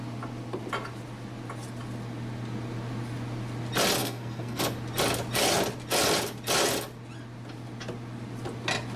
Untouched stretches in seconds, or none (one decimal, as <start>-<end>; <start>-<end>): 0.0-4.0; 4.6-9.0